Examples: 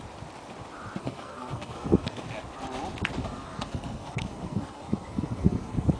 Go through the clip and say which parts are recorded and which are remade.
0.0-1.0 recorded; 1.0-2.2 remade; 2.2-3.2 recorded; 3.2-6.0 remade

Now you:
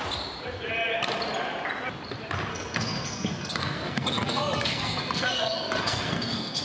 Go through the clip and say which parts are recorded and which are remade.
0.0-2.5 recorded; 2.5-6.6 remade